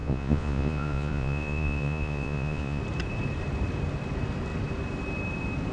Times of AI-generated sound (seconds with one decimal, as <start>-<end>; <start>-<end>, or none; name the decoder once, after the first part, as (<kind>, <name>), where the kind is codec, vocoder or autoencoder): 0.0-2.8 (vocoder, Vocos)